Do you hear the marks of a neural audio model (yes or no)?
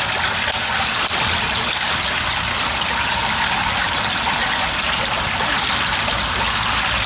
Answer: no